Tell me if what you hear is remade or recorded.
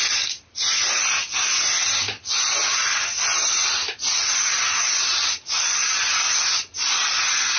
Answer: recorded